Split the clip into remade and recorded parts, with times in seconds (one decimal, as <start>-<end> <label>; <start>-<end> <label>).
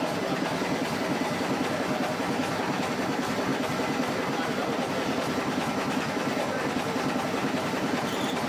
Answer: 0.0-8.5 recorded